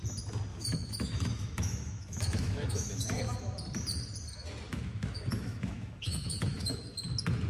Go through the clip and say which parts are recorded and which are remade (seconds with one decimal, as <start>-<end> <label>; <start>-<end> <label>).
0.0-0.5 recorded; 0.5-3.2 remade; 3.2-4.7 recorded; 4.7-6.8 remade; 6.8-7.5 recorded